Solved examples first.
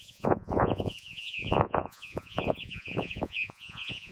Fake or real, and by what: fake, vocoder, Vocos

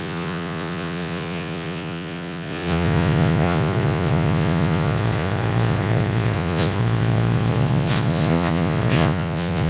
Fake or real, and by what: fake, vocoder, Vocos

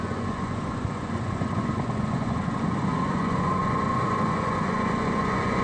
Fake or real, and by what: fake, vocoder, Vocos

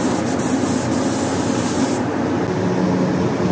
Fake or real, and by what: real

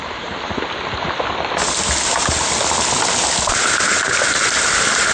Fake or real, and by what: real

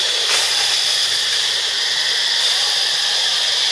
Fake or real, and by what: real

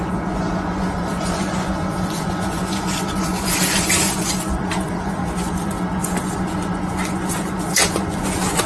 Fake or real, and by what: fake, vocoder, Vocos